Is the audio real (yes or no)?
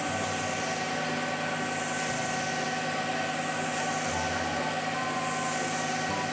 yes